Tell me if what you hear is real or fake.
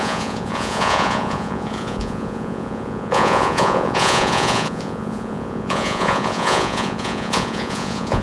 fake